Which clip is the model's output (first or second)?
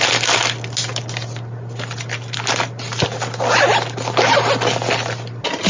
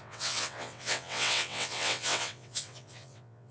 second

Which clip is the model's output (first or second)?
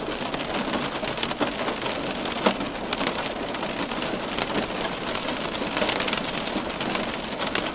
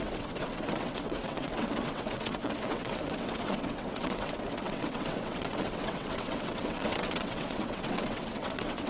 second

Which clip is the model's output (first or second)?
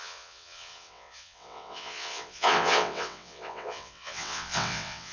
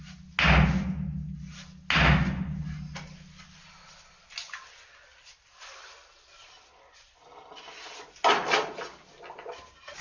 first